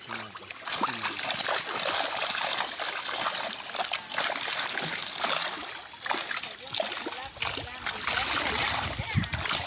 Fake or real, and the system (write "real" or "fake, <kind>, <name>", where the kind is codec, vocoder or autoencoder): real